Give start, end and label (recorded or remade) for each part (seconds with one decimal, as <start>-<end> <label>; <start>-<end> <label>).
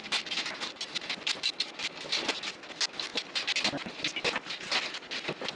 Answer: 0.0-5.6 recorded